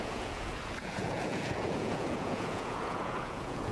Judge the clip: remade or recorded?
remade